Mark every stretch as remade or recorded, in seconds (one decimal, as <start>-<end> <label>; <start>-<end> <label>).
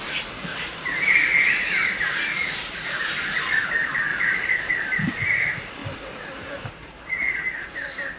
0.0-2.3 recorded; 2.3-3.0 remade; 3.0-4.1 recorded; 4.1-4.7 remade; 4.7-8.2 recorded